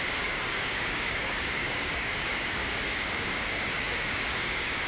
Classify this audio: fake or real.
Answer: fake